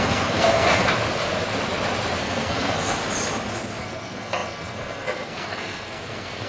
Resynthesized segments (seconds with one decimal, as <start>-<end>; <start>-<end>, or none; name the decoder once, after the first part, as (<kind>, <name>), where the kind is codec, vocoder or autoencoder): 0.0-0.8 (codec, SNAC); 2.2-3.0; 3.8-6.5

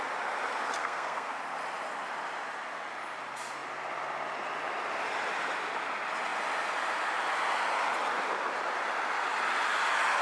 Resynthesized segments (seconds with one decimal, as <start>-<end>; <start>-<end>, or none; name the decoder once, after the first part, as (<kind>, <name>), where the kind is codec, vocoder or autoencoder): 0.8-1.4 (codec, SNAC)

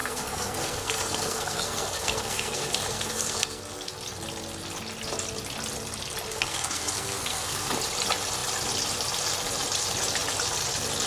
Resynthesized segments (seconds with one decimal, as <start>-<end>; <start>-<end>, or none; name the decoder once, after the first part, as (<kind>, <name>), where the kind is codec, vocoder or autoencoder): 0.0-3.9 (codec, SNAC); 6.3-7.7

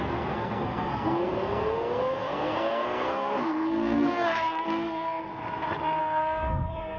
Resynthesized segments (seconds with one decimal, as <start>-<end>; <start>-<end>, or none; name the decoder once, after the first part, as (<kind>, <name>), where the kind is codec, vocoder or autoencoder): 0.0-5.3 (codec, SNAC); 6.0-7.0

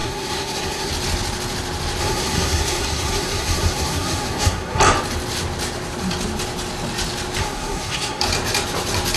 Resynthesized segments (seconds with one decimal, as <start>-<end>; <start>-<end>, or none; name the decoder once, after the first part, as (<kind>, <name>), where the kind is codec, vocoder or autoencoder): 0.0-0.9 (codec, SNAC); 2.0-4.8; 7.4-8.2